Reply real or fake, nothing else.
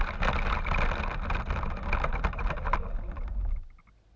real